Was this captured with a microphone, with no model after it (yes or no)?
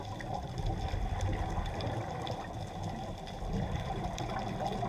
yes